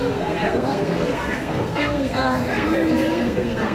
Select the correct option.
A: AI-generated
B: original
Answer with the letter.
A